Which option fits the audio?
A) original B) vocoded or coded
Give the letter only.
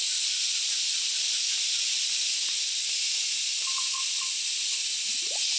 A